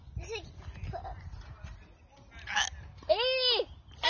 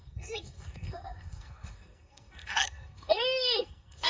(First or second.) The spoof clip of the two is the second